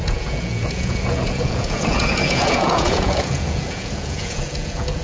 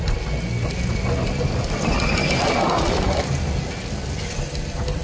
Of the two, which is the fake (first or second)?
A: first